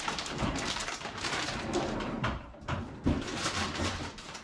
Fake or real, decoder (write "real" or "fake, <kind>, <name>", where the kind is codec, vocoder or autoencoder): fake, vocoder, BigVGAN v2